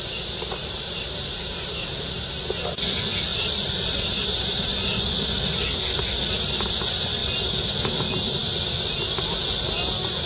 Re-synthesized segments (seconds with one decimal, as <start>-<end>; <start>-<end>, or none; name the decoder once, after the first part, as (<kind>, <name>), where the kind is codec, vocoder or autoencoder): 0.6-1.7 (vocoder, BigVGAN v2); 3.3-5.1